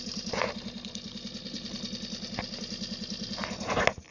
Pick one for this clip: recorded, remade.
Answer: recorded